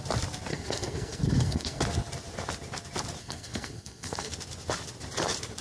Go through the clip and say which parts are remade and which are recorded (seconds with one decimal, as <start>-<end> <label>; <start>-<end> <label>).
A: 0.0-0.5 recorded; 0.5-1.8 remade; 1.8-3.2 recorded; 3.2-4.3 remade; 4.3-5.6 recorded